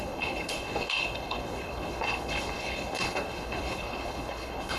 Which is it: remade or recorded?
remade